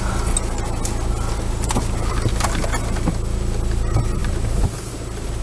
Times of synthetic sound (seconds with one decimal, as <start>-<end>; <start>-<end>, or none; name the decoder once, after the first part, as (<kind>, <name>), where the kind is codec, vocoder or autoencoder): none